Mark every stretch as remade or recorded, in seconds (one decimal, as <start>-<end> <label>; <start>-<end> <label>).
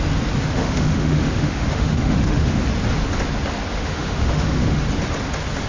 0.0-0.5 recorded; 0.5-2.6 remade; 2.6-3.7 recorded; 3.7-4.8 remade; 4.8-5.7 recorded